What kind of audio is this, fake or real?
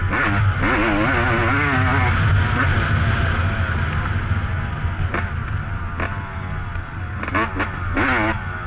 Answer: real